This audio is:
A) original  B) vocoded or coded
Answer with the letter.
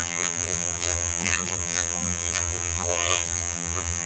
B